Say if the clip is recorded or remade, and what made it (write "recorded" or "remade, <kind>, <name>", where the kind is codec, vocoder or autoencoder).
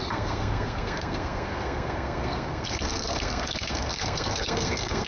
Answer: remade, codec, SNAC